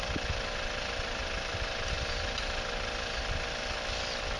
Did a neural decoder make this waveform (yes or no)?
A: no